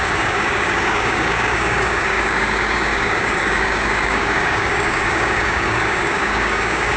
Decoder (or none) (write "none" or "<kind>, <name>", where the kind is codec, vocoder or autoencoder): codec, DAC